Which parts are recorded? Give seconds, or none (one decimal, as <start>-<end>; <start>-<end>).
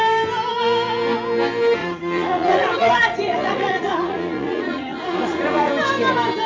0.0-1.8; 5.7-6.5